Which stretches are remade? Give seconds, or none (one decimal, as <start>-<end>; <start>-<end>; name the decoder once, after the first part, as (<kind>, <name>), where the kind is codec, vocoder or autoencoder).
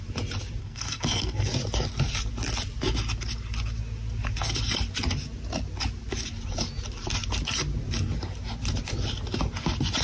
0.6-1.5 (codec, SNAC)